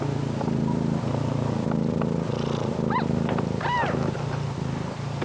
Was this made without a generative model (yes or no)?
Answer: yes